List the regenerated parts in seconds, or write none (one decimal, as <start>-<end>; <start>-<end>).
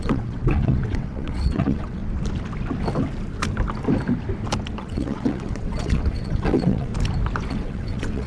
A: 0.0-2.0; 4.8-6.9; 7.5-8.3